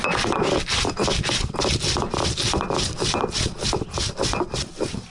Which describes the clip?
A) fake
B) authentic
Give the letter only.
B